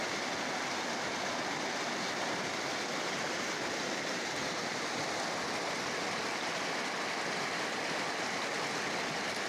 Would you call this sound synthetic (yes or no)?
no